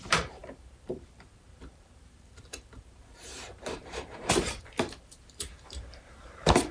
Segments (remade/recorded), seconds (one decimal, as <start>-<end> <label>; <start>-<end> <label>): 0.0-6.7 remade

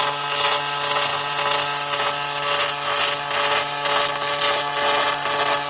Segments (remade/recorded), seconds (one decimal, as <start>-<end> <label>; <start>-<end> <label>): 0.0-5.7 recorded

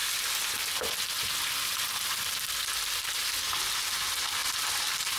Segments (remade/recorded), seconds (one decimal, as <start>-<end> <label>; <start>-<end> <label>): 0.0-0.7 remade; 0.7-4.4 recorded; 4.4-5.2 remade

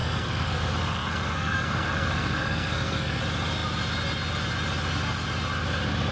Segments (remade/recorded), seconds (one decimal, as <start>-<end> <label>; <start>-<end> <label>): 0.0-3.2 remade; 3.2-6.1 recorded

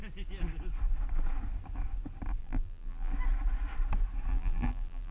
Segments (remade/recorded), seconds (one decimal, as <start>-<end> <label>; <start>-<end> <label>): 0.0-2.4 recorded; 2.4-3.1 remade; 3.1-4.3 recorded; 4.3-5.1 remade